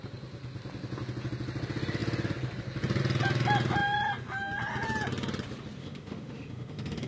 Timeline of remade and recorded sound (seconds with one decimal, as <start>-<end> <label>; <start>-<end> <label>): 0.0-5.8 recorded; 5.8-7.1 remade